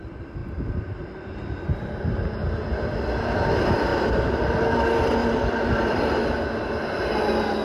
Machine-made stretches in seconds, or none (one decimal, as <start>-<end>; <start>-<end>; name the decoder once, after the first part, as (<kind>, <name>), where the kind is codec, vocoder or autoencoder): 3.9-4.7 (vocoder, BigVGAN v2); 5.2-6.3